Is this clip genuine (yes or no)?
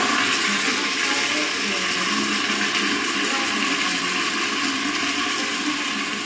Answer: yes